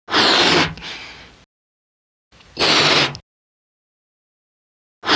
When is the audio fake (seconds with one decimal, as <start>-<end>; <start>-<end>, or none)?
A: none